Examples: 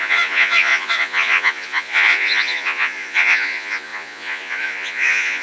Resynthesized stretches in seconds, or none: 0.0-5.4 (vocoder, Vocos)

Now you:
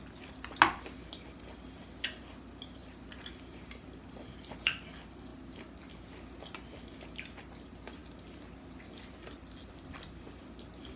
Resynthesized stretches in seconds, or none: none

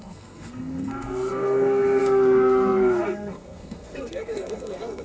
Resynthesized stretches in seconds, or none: 0.0-5.0 (codec, SNAC)

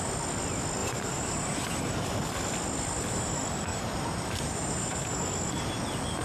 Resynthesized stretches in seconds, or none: 0.8-1.8 (vocoder, BigVGAN v2); 3.7-5.2

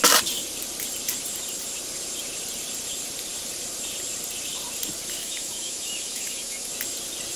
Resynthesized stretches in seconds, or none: 5.2-6.7 (autoencoder, DAC-VAE)

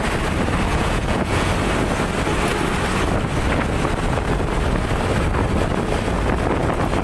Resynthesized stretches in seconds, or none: 0.7-1.5 (vocoder, Vocos)

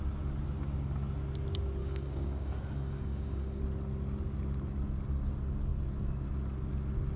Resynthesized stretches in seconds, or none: 1.8-3.6 (codec, DAC)

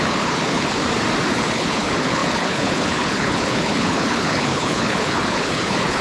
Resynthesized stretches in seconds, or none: 0.0-0.8 (codec, HILCodec); 1.3-6.0